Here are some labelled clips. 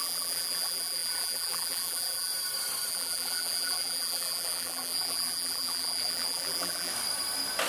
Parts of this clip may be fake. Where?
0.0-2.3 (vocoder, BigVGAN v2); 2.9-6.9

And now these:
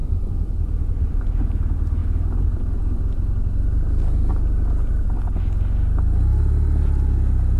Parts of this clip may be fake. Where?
0.0-1.1 (vocoder, BigVGAN v2)

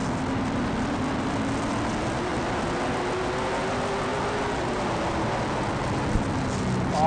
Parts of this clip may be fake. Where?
none

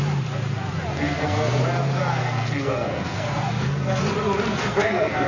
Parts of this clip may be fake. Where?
0.9-1.6 (codec, SNAC); 2.2-4.0; 4.5-5.3